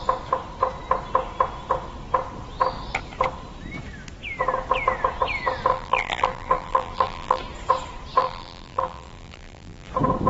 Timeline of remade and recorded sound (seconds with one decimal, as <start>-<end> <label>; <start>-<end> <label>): 0.0-5.7 recorded; 5.7-7.4 remade; 7.4-8.2 recorded; 8.2-9.9 remade; 9.9-10.3 recorded